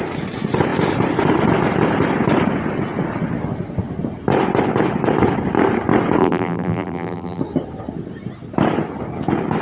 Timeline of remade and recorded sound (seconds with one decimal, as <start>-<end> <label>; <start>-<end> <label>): 0.0-6.2 recorded; 6.2-7.4 remade; 7.4-9.6 recorded